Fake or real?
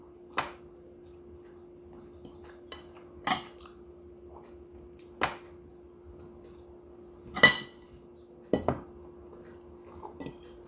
real